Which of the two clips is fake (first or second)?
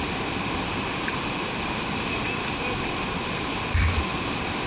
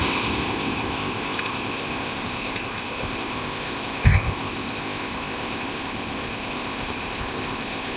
second